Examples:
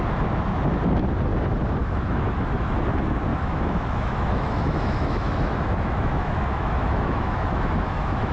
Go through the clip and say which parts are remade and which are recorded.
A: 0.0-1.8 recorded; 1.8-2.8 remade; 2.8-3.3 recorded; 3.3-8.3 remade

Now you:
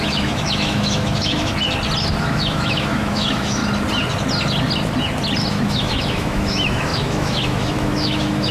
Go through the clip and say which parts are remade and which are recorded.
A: 0.0-1.5 remade; 1.5-2.2 recorded; 2.2-3.6 remade; 3.6-5.5 recorded; 5.5-8.5 remade

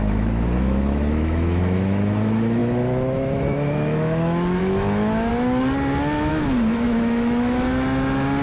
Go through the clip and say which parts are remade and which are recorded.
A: 0.0-5.3 remade; 5.3-6.3 recorded; 6.3-8.4 remade

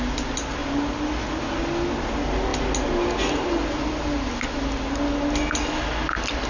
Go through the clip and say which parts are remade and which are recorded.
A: 0.0-6.5 recorded

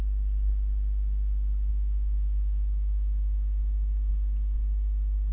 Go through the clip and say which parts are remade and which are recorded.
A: 0.0-1.7 recorded; 1.7-4.1 remade; 4.1-5.3 recorded